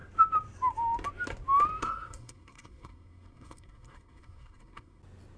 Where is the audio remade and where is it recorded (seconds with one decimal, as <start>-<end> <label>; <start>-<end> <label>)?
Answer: 0.0-1.8 recorded; 1.8-5.0 remade; 5.0-5.4 recorded